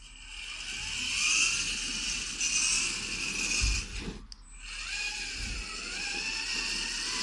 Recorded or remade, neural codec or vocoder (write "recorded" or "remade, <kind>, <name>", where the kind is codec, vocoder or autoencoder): recorded